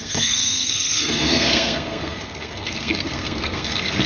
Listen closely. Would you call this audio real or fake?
fake